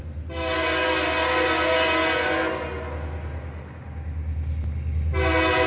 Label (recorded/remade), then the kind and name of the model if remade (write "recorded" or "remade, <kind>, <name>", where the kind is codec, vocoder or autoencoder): recorded